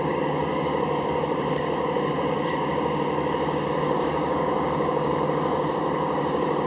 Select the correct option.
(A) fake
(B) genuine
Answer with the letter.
A